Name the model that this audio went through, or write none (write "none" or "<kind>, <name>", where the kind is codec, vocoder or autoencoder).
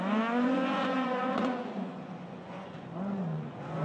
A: vocoder, Vocos